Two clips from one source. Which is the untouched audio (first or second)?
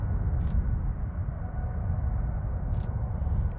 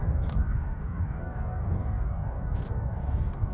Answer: first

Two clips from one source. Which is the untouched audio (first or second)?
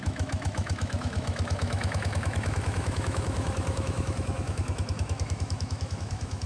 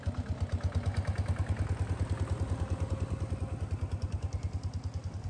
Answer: second